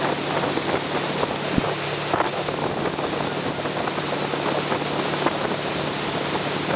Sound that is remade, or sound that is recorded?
recorded